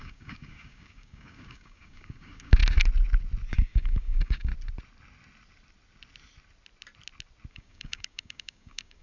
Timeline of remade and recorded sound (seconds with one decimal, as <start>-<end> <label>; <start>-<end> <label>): 0.0-2.6 remade; 2.6-3.5 recorded; 3.5-4.5 remade; 4.5-7.5 recorded; 7.5-9.0 remade